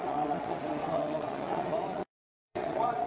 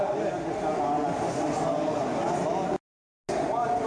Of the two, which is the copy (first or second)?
first